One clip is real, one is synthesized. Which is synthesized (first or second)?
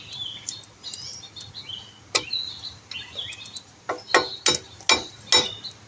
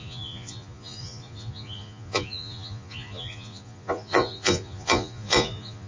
second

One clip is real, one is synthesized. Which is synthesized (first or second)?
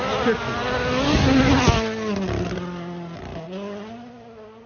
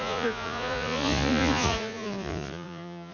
second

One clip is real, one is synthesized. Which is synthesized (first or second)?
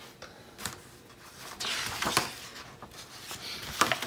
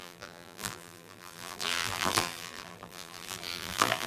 second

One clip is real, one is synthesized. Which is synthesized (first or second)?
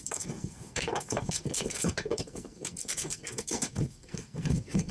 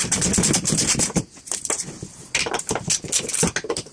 first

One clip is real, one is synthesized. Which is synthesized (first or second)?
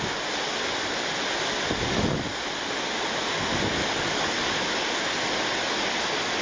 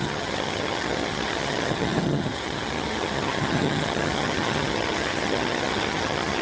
second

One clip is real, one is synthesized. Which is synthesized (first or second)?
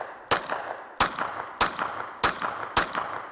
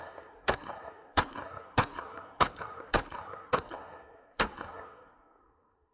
second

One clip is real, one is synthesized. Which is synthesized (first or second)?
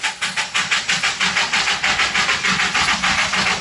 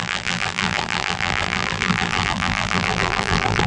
second